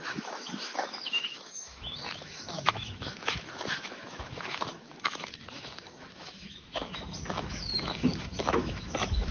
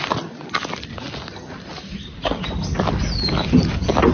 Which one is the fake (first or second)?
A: first